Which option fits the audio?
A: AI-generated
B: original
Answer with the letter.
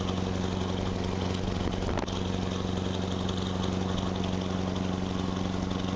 B